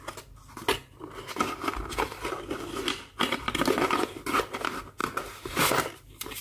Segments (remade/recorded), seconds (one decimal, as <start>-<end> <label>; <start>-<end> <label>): 0.0-6.4 recorded